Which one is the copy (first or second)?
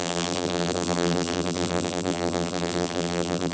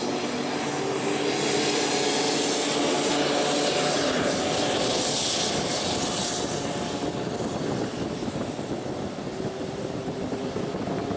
first